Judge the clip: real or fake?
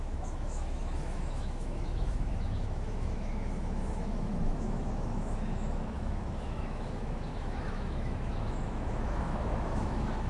fake